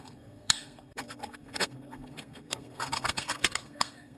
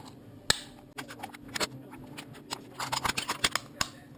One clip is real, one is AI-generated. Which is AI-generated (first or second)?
first